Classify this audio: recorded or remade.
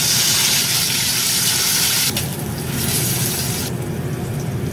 recorded